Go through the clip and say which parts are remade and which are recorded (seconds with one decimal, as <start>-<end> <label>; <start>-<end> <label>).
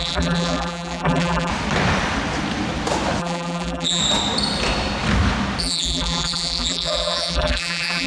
0.0-1.5 remade; 1.5-3.2 recorded; 3.2-4.0 remade; 4.0-5.6 recorded; 5.6-8.1 remade